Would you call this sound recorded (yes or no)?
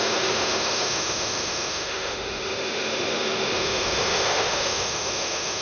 no